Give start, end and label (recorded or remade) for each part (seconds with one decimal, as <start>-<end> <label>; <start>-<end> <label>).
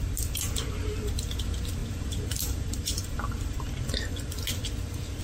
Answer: 0.0-5.2 recorded